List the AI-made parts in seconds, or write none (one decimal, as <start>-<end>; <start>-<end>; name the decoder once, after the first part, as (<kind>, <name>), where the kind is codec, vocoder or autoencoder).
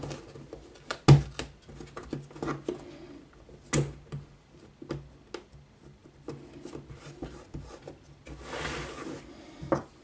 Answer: none